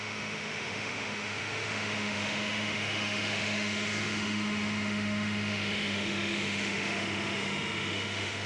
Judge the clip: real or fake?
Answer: fake